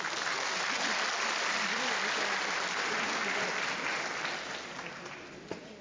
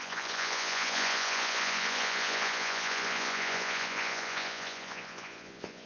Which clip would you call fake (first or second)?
second